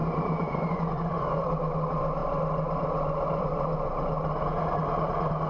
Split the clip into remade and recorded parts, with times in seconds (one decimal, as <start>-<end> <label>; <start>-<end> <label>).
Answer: 0.0-1.3 remade; 1.3-5.5 recorded